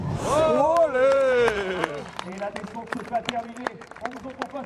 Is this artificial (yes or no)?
yes